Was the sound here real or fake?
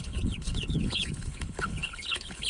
fake